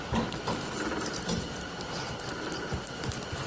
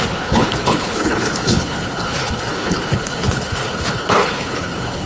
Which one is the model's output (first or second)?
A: second